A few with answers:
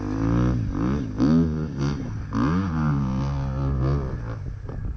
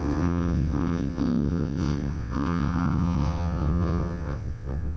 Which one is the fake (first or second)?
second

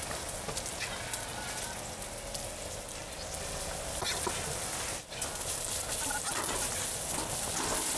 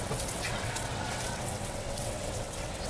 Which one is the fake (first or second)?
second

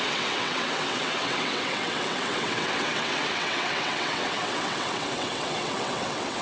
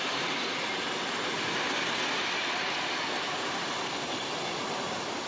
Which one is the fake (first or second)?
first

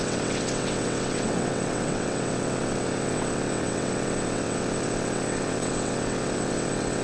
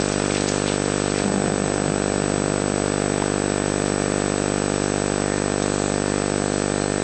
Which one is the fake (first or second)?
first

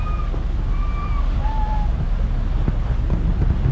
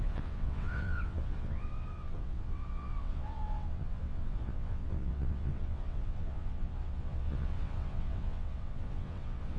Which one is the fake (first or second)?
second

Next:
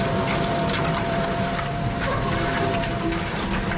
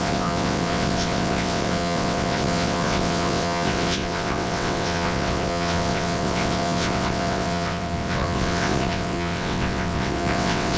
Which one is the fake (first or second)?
second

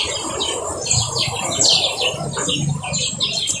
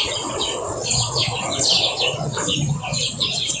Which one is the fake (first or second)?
second